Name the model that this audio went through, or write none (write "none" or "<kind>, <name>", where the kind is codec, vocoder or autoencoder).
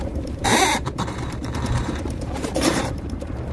vocoder, BigVGAN v2